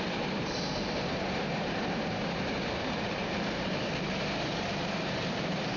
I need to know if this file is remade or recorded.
remade